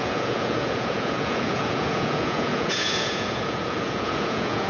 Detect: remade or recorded remade